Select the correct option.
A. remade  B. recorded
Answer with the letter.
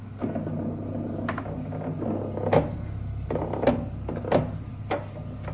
B